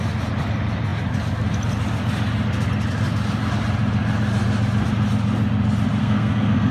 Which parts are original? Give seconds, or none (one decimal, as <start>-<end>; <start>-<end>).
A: 0.0-6.0